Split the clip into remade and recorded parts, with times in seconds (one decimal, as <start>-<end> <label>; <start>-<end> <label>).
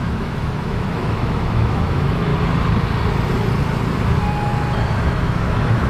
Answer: 0.0-2.3 remade; 2.3-5.0 recorded; 5.0-5.9 remade